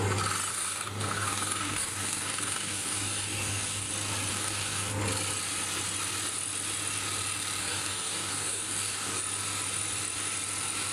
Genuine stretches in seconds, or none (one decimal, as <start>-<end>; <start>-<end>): 0.0-0.5; 3.9-4.3; 4.9-7.6; 9.2-10.9